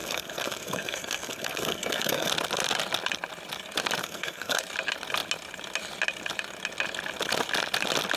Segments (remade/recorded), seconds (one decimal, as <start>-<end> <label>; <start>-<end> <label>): 0.0-2.3 remade; 2.3-4.0 recorded; 4.0-4.6 remade; 4.6-8.2 recorded